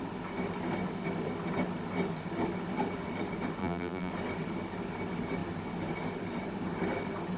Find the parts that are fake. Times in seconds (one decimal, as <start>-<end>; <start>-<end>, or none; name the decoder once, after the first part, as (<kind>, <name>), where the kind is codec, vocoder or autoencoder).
3.6-4.1 (vocoder, BigVGAN v2)